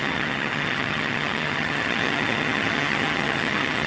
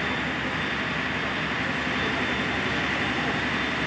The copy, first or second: first